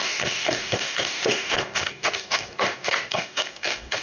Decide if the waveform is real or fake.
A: fake